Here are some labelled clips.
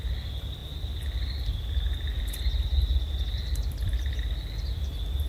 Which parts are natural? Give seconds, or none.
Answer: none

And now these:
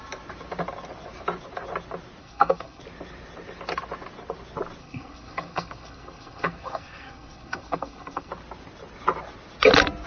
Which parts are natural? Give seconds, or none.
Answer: 0.0-2.2; 2.8-4.8; 8.3-10.1

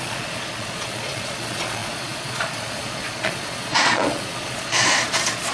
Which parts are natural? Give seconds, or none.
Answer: none

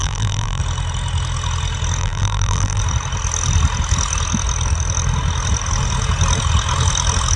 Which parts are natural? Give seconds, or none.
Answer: 0.6-2.0; 2.8-7.4

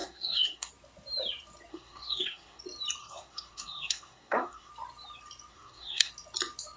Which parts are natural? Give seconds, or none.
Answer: 0.7-1.7; 2.6-3.0; 4.7-5.5; 6.1-6.8